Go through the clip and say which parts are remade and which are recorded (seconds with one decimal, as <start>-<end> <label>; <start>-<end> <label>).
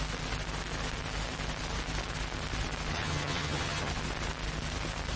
0.0-2.9 recorded; 2.9-3.9 remade; 3.9-5.2 recorded